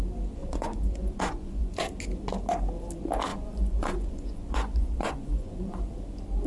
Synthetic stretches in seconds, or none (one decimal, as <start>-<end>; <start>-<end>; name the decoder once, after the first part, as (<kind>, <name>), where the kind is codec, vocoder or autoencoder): 0.4-1.7 (vocoder, Vocos); 3.3-5.8